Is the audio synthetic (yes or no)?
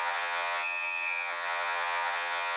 yes